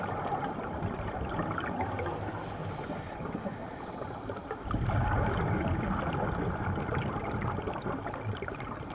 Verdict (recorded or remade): remade